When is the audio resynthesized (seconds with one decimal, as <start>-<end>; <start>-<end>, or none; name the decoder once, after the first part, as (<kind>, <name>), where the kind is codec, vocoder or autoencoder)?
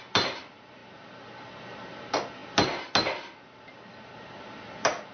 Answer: none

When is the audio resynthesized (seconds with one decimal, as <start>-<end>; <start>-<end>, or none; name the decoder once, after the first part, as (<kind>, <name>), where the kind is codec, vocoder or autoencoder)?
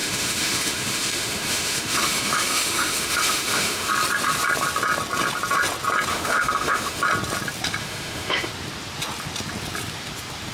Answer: 0.0-3.9 (autoencoder, DAC-VAE); 6.1-7.0; 7.8-8.5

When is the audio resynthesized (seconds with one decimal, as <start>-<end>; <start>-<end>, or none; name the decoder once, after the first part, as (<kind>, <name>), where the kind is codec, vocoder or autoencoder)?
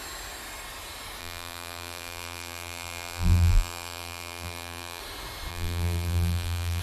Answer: 1.2-5.0 (vocoder, BigVGAN v2); 5.5-6.8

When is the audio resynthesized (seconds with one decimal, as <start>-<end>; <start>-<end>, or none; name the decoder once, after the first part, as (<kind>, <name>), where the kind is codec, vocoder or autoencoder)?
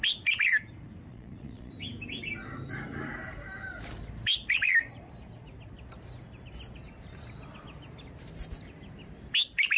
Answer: 1.1-1.7 (vocoder, Vocos)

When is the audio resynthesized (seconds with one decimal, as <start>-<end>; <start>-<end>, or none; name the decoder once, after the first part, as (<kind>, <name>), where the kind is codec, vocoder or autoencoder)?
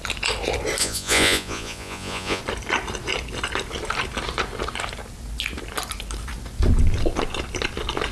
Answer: 0.8-2.4 (vocoder, Vocos)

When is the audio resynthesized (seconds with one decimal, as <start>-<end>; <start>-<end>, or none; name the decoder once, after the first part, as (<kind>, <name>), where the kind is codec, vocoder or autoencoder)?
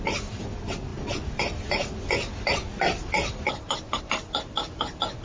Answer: none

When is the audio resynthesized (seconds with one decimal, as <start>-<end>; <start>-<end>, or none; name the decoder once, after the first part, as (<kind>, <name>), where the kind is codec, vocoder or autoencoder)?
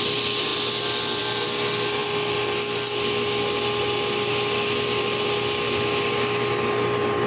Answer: none